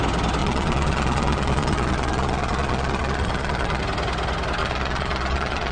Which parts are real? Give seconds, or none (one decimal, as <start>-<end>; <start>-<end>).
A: 0.0-0.4; 3.8-4.6